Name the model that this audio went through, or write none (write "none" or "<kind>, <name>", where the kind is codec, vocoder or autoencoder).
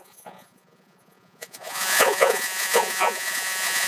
vocoder, Vocos